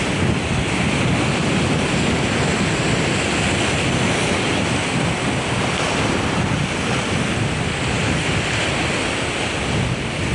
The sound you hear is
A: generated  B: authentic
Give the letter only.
B